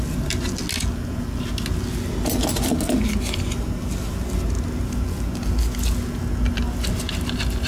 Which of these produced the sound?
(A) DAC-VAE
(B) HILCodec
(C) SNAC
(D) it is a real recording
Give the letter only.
D